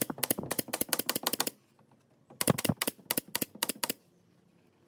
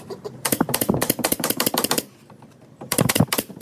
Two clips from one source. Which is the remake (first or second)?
second